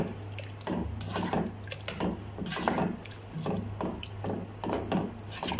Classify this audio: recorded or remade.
recorded